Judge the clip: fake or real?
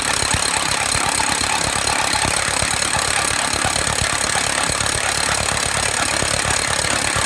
real